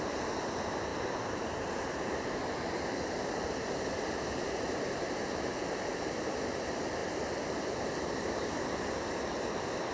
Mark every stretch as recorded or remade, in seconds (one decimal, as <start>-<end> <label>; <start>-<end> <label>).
0.0-0.9 recorded; 0.9-6.1 remade; 6.1-9.9 recorded